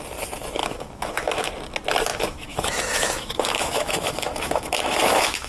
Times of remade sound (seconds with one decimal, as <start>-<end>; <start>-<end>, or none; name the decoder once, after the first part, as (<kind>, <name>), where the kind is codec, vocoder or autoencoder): 0.6-1.5 (autoencoder, DAC-VAE); 2.1-5.5